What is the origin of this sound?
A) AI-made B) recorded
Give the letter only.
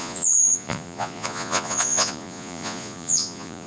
A